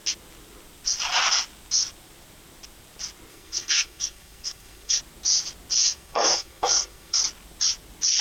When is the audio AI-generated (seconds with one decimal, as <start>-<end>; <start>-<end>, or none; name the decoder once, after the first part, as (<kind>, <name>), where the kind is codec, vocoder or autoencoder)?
3.3-5.0 (codec, SNAC); 5.8-7.2